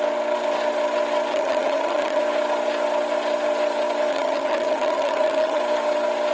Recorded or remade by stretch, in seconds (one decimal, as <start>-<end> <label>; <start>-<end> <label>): 0.0-1.3 recorded; 1.3-2.2 remade; 2.2-4.1 recorded; 4.1-5.6 remade; 5.6-6.3 recorded